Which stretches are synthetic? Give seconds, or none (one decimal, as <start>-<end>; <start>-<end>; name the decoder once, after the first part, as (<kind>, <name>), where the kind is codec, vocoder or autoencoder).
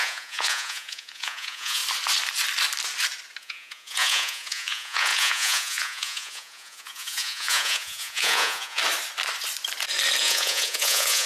0.0-1.8 (vocoder, Vocos); 3.4-8.8; 10.2-11.3